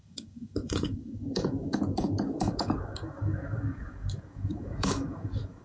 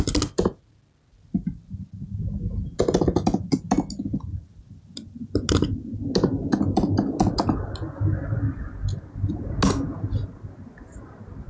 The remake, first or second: first